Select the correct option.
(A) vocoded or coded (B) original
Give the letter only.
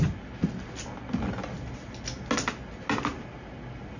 B